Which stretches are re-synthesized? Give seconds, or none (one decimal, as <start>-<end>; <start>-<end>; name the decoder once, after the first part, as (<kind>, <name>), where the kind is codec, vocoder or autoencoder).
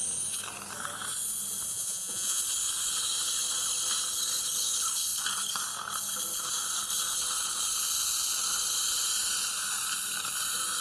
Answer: 1.7-2.4 (vocoder, Vocos)